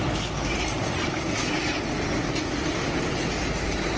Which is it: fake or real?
real